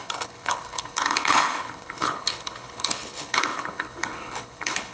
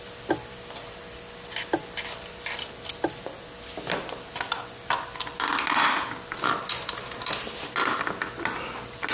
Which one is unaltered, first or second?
second